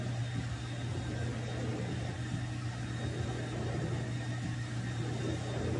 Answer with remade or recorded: recorded